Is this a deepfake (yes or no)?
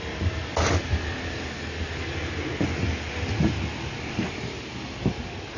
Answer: no